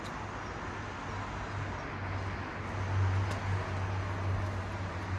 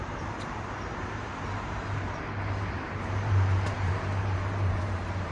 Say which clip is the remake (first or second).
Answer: second